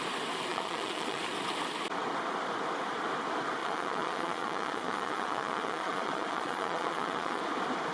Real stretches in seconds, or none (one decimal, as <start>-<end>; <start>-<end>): 0.0-0.5; 1.2-3.6; 7.4-7.9